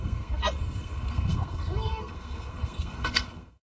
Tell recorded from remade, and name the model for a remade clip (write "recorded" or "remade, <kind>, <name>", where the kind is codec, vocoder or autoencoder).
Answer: remade, codec, SNAC